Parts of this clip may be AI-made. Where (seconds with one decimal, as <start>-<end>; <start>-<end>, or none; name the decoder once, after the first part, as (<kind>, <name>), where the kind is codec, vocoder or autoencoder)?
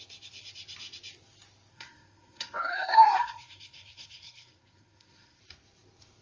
1.7-5.4 (codec, SNAC)